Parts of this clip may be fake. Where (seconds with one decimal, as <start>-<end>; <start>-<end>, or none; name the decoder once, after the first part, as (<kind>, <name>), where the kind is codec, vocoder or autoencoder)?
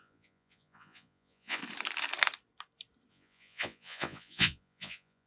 0.0-1.6 (vocoder, Vocos); 3.1-5.3